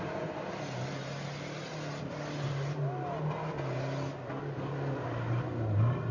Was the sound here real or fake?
real